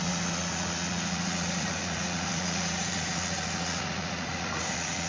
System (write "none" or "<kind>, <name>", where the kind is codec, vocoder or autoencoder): vocoder, Vocos